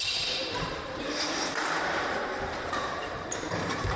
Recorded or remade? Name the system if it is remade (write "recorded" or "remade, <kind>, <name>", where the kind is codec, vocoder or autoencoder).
remade, vocoder, BigVGAN v2